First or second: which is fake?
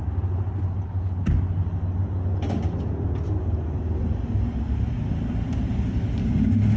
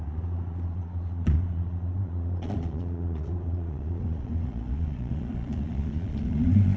second